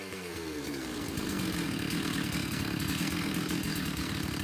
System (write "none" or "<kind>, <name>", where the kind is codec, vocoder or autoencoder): codec, SNAC